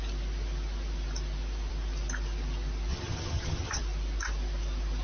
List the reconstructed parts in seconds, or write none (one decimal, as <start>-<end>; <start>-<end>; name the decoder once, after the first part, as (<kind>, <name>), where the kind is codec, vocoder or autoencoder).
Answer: 2.9-3.8 (vocoder, HiFi-GAN)